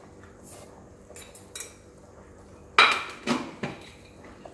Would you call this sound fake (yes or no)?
no